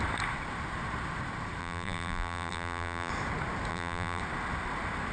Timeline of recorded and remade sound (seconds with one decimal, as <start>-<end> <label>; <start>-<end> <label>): 0.0-1.6 recorded; 1.6-3.1 remade; 3.1-3.7 recorded; 3.7-4.2 remade; 4.2-5.1 recorded

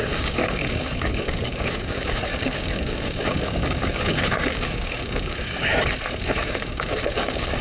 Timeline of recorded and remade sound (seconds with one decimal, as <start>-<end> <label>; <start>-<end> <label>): 0.0-5.7 remade; 5.7-6.2 recorded; 6.2-7.6 remade

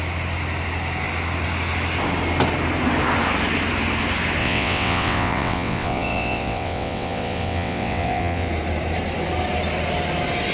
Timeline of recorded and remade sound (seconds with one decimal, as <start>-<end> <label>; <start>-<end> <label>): 0.0-4.4 recorded; 4.4-8.5 remade; 8.5-10.5 recorded

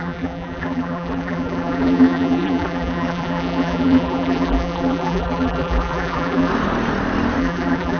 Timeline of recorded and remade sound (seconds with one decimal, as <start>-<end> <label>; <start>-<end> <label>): 0.0-6.5 remade; 6.5-7.4 recorded; 7.4-8.0 remade